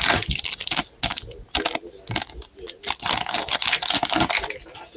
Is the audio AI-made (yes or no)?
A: no